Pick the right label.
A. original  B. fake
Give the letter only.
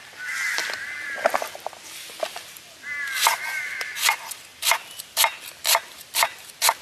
A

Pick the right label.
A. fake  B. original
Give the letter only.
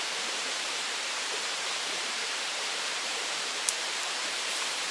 A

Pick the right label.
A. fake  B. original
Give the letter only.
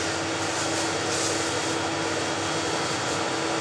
B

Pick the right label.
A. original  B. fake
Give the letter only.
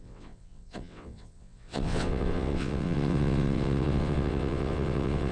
B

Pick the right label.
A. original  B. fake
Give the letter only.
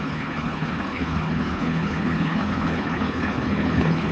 B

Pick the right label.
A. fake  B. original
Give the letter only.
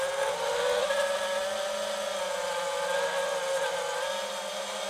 B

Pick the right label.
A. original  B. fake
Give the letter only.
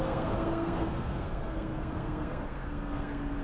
B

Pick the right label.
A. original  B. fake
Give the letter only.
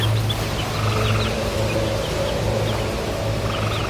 A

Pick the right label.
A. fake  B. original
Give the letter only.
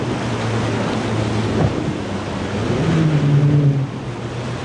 B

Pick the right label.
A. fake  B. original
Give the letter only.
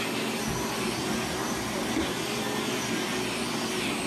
B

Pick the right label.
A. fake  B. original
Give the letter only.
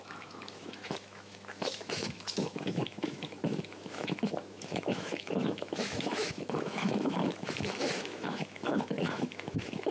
A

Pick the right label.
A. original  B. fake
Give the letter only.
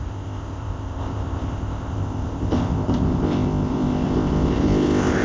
B